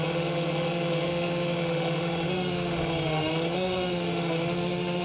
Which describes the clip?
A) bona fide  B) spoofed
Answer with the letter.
B